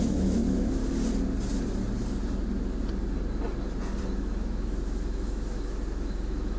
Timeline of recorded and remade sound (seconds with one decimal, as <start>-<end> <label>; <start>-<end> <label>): 0.0-0.8 remade; 0.8-4.0 recorded; 4.0-6.6 remade